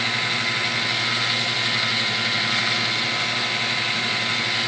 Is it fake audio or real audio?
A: real